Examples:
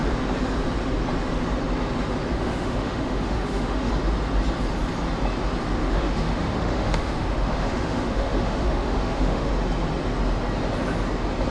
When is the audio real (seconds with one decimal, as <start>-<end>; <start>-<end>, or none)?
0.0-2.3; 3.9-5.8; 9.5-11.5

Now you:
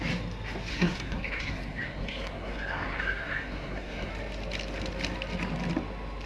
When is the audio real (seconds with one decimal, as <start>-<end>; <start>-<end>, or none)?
0.0-0.7; 4.1-6.3

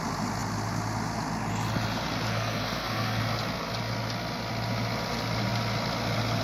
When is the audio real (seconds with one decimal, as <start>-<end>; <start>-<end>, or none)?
0.0-2.3; 3.2-6.4

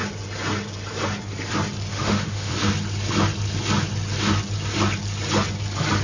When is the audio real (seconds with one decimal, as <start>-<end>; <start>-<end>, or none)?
0.0-1.9; 2.5-6.0

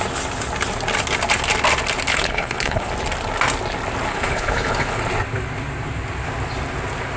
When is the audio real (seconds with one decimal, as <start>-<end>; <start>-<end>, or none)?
0.0-2.1; 2.9-4.1; 5.0-7.2

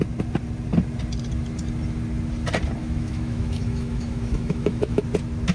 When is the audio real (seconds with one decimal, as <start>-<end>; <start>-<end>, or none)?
0.0-2.8; 5.0-5.5

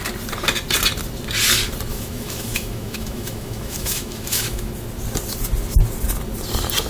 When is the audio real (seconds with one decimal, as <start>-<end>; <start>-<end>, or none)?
0.0-1.9; 4.7-6.9